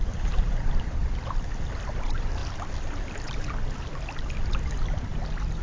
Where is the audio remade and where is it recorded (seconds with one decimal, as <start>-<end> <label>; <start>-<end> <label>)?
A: 0.0-1.0 remade; 1.0-1.9 recorded; 1.9-2.4 remade; 2.4-5.6 recorded